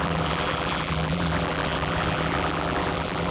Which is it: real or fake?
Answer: fake